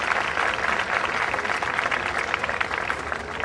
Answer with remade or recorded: recorded